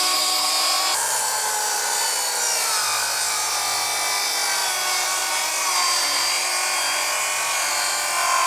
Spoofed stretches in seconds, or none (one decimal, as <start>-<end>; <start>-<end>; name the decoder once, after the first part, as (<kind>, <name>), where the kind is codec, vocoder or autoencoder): 0.0-0.5 (codec, SNAC)